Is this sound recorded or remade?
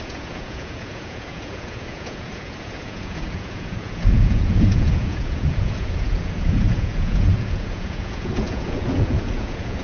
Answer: remade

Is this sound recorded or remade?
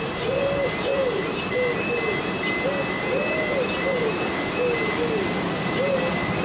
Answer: recorded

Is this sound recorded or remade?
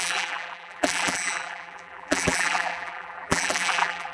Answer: remade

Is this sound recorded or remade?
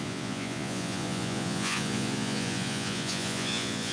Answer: remade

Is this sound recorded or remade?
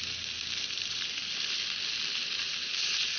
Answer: recorded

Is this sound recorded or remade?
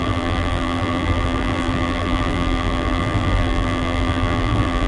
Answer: remade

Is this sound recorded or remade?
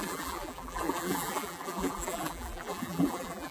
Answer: remade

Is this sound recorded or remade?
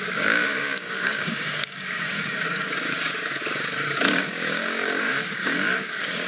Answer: remade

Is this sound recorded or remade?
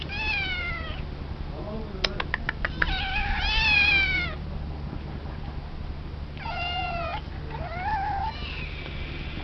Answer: recorded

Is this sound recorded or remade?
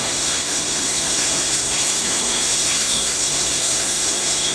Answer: remade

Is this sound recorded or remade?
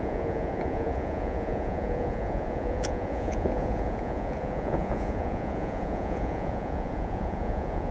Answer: remade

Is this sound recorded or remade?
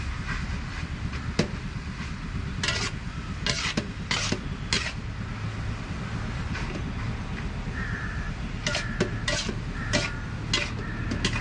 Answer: recorded